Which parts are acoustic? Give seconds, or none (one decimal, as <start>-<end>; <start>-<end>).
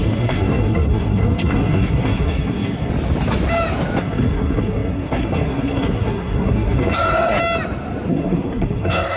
2.9-4.0; 7.4-8.1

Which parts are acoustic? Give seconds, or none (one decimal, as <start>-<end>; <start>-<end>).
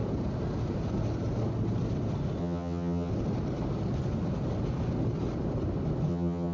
0.0-2.4; 3.1-6.1